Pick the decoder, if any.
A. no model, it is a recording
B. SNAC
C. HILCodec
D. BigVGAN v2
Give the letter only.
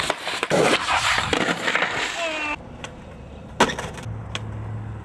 A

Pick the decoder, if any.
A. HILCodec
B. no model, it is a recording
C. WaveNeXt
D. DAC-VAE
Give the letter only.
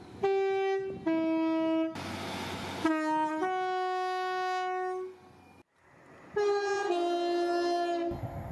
B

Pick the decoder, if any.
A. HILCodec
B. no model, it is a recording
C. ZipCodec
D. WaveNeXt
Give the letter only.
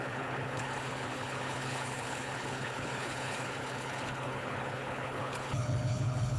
A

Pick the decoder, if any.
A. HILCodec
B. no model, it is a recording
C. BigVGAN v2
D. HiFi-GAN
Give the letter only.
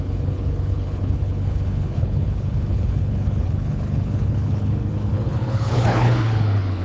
A